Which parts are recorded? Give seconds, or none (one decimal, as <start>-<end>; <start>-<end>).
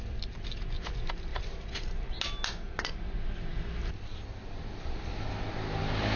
0.0-6.2